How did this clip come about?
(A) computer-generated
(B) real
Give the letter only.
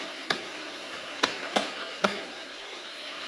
A